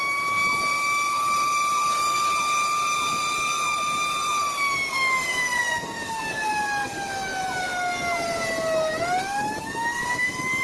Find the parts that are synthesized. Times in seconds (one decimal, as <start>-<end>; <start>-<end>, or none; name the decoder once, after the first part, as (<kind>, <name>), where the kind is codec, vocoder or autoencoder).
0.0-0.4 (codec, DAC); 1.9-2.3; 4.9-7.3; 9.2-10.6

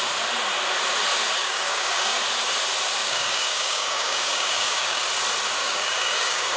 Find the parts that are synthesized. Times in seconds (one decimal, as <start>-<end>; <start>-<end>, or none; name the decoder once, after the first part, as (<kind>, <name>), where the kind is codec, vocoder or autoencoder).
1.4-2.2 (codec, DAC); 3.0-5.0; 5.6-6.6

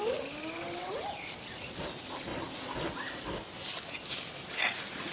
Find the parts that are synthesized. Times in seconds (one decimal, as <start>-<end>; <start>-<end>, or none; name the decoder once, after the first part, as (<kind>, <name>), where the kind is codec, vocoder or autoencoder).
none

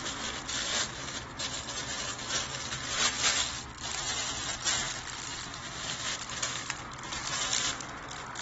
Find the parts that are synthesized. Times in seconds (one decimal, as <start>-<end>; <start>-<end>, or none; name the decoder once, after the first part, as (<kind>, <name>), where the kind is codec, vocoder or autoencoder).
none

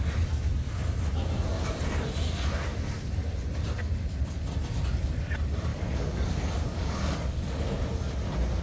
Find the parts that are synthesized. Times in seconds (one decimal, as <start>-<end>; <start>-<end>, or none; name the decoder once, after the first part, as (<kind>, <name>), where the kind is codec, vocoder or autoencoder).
5.7-7.6 (codec, DAC)

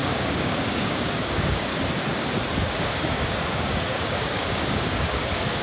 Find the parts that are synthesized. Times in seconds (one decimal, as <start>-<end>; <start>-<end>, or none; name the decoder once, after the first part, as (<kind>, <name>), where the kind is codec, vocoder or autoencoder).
0.0-1.7 (codec, DAC); 2.7-5.6

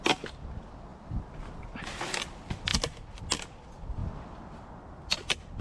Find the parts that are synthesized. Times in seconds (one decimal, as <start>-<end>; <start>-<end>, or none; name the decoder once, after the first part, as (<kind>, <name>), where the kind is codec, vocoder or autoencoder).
none

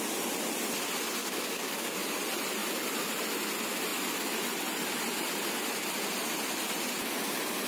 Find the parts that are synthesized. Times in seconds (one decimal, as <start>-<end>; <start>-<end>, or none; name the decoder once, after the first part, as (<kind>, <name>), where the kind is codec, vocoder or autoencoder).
1.2-2.0 (codec, DAC)